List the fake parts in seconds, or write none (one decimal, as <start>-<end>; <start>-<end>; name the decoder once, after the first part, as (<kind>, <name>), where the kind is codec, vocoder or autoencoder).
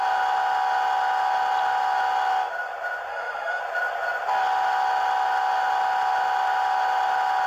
3.1-3.6 (autoencoder, DAC-VAE)